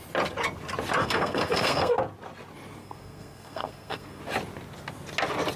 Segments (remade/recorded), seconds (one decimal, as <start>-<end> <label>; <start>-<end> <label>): 0.0-1.0 recorded; 1.0-1.9 remade; 1.9-2.8 recorded; 2.8-4.2 remade; 4.2-5.6 recorded